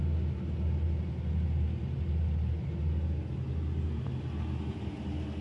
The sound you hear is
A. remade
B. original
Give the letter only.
B